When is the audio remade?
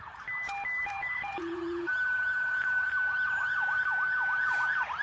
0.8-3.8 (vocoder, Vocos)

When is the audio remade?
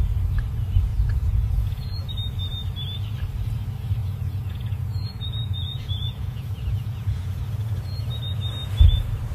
0.9-2.1 (vocoder, Vocos); 4.0-7.4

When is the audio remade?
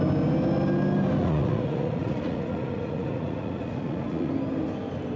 1.2-4.3 (vocoder, Vocos)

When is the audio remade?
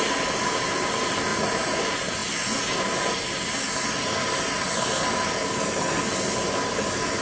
1.3-1.8 (vocoder, Vocos)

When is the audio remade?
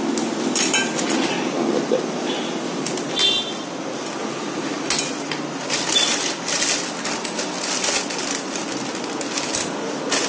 4.2-4.9 (vocoder, Vocos)